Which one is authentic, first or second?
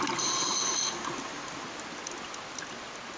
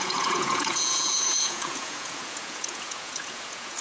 first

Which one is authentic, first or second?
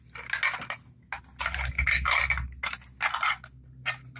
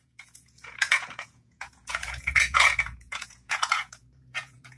first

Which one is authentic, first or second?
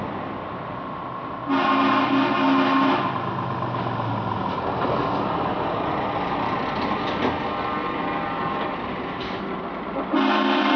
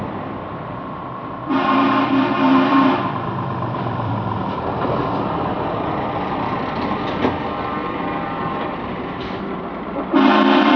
first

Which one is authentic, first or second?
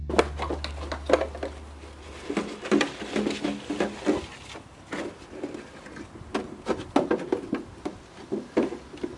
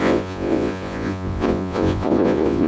first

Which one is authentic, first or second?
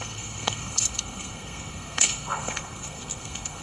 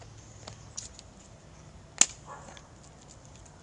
second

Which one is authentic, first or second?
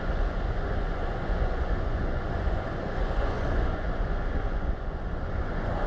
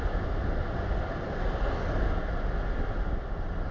second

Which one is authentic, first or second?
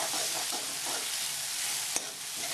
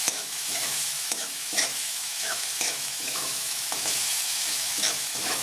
first